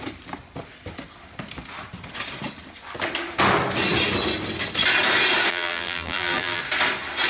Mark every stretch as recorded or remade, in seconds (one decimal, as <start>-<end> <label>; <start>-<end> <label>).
0.0-5.5 recorded; 5.5-6.6 remade; 6.6-7.3 recorded